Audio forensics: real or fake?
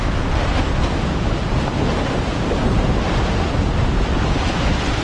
real